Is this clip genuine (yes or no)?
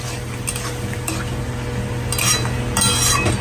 yes